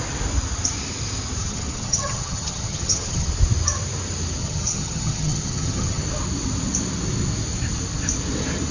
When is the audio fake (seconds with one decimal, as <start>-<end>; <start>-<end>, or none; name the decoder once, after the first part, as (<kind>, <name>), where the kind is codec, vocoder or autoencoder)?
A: 1.4-3.3 (vocoder, HiFi-GAN); 4.4-6.0